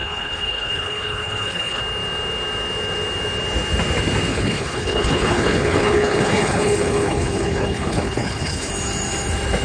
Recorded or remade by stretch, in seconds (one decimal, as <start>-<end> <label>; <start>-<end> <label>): 0.0-1.8 remade; 1.8-4.3 recorded; 4.3-8.7 remade; 8.7-9.6 recorded